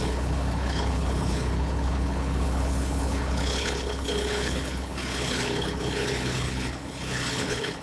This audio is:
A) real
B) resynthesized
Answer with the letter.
B